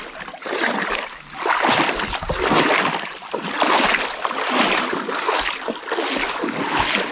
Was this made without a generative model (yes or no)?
yes